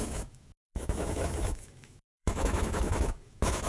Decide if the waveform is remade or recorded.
remade